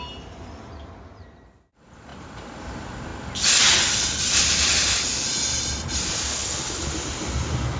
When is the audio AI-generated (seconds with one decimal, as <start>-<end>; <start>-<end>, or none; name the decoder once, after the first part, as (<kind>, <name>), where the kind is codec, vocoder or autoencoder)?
6.3-6.9 (codec, HILCodec)